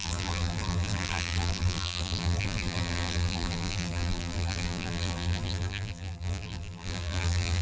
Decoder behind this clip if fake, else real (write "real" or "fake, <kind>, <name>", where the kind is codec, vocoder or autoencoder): fake, vocoder, BigVGAN v2